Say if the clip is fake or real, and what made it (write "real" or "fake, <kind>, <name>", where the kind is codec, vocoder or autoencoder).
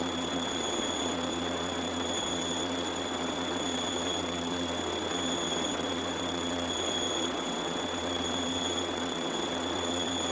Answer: fake, vocoder, WaveNeXt